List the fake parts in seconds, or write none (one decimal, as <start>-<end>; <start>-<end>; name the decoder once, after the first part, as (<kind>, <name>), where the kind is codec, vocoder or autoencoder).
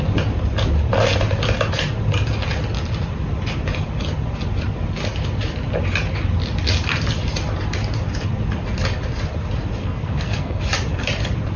9.8-10.6 (codec, SNAC)